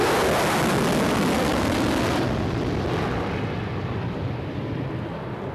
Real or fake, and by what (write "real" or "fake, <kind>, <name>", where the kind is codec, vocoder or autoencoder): real